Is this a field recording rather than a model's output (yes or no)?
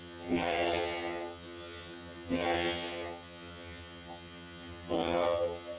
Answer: no